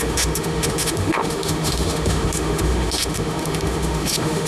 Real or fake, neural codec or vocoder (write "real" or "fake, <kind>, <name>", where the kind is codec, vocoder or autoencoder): fake, autoencoder, DAC-VAE